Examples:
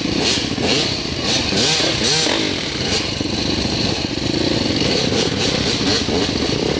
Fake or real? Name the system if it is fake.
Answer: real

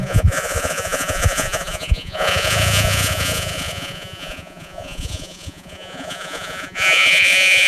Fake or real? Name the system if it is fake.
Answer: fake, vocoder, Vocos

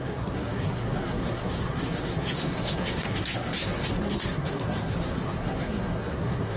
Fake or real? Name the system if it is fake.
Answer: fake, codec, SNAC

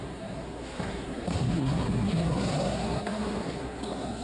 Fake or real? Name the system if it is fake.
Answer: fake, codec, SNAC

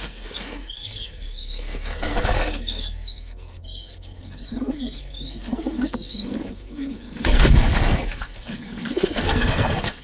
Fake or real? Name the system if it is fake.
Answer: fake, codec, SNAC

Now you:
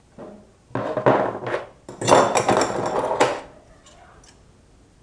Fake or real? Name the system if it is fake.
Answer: real